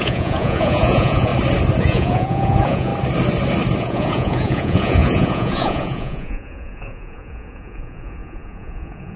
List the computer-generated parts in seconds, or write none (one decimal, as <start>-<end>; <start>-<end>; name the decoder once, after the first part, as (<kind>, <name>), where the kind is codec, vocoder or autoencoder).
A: 0.0-1.3 (vocoder, Vocos); 1.8-2.9; 3.8-9.2